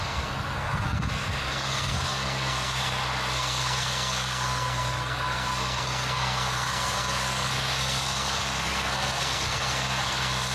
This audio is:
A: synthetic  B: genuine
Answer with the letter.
A